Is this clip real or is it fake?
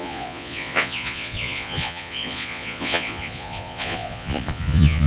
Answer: fake